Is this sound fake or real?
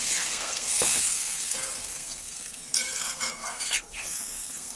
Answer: fake